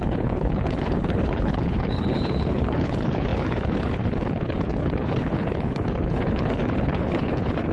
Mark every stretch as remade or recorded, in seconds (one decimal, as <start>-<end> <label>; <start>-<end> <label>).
0.0-7.7 remade